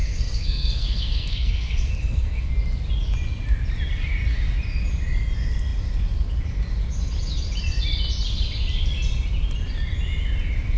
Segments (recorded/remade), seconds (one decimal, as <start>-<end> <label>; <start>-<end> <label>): 0.0-2.5 remade; 2.5-10.8 recorded